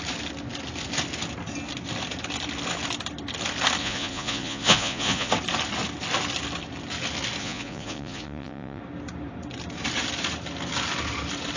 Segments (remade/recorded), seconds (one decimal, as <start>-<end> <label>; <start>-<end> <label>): 0.0-3.8 recorded; 3.8-5.3 remade; 5.3-7.4 recorded; 7.4-8.8 remade; 8.8-11.6 recorded